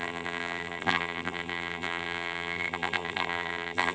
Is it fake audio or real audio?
fake